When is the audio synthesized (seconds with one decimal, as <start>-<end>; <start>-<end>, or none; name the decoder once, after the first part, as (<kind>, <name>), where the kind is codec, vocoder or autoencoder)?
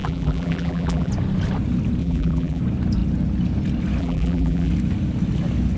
0.0-1.1 (vocoder, BigVGAN v2); 2.0-2.6; 4.0-4.7